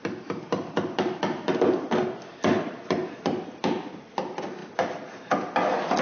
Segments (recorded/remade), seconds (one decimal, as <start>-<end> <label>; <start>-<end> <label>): 0.0-6.0 recorded